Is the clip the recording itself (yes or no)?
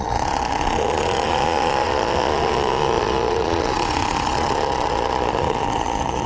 no